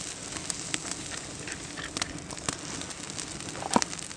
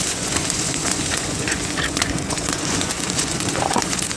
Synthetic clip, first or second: second